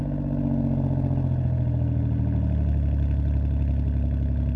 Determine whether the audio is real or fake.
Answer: real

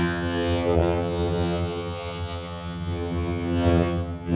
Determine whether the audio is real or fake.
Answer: fake